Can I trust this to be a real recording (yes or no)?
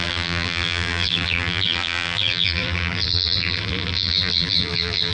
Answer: no